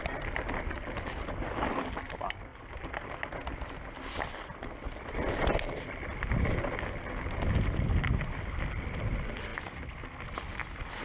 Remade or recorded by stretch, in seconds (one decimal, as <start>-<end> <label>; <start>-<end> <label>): 0.0-11.0 recorded